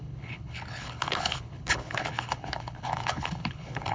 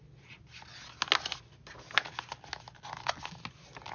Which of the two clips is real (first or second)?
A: second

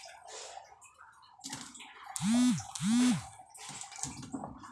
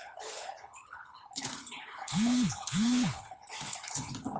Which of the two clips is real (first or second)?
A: first